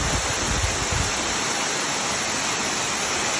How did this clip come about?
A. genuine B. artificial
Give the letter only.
A